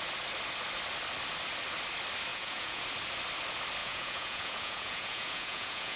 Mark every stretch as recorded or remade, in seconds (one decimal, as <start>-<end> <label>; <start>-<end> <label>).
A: 0.0-2.3 recorded; 2.3-2.8 remade; 2.8-3.8 recorded; 3.8-6.0 remade